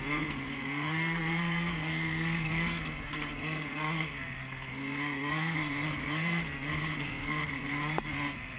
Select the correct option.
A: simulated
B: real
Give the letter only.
A